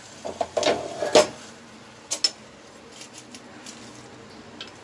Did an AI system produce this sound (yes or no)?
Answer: no